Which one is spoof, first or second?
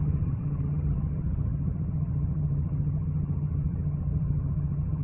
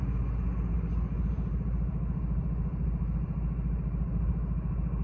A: first